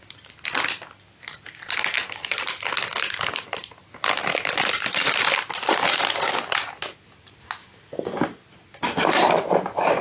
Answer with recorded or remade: recorded